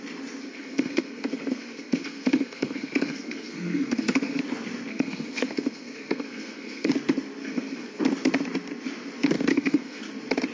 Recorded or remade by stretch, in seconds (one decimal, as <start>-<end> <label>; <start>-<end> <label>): 0.0-0.4 recorded; 0.4-4.4 remade; 4.4-4.9 recorded; 4.9-6.9 remade; 6.9-7.4 recorded; 7.4-8.0 remade; 8.0-9.5 recorded; 9.5-10.0 remade; 10.0-10.5 recorded